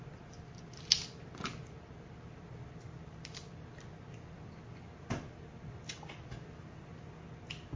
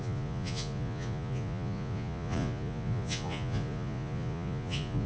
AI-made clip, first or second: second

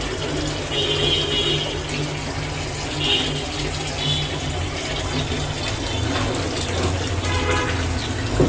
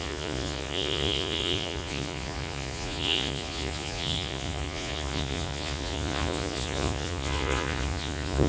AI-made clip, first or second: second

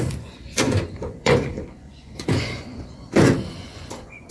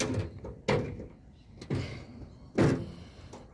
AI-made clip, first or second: first